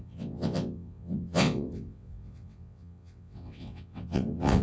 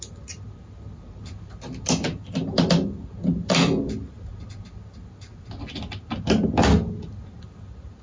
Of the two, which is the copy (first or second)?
first